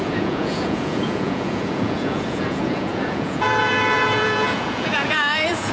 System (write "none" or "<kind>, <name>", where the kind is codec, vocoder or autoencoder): vocoder, Vocos